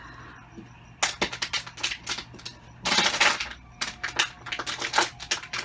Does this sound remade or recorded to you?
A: recorded